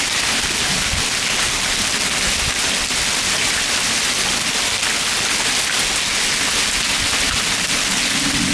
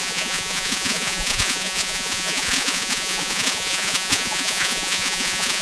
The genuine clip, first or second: first